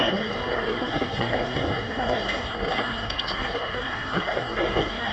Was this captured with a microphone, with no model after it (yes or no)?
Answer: no